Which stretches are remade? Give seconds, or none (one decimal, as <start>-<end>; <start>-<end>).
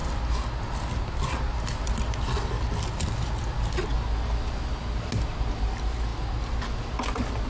none